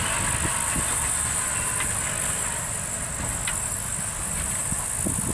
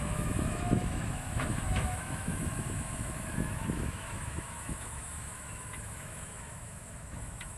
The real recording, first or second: first